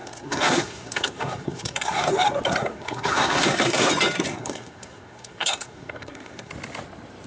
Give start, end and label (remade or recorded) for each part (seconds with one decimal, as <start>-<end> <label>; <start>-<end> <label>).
0.0-2.1 remade; 2.1-2.6 recorded; 2.6-3.9 remade; 3.9-4.3 recorded; 4.3-6.5 remade; 6.5-7.3 recorded